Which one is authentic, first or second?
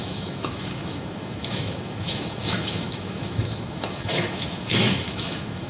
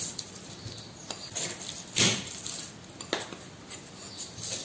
second